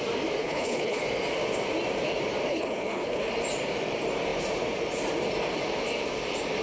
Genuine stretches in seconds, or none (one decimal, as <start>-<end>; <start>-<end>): 0.0-0.4; 1.0-2.5; 3.3-6.6